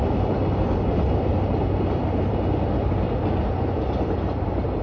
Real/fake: real